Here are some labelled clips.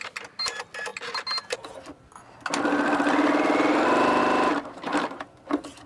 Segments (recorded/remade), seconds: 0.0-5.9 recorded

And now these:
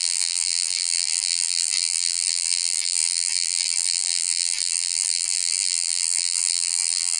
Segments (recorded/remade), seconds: 0.0-7.2 remade